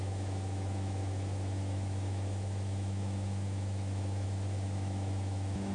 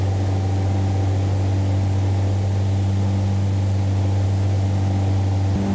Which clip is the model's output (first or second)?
first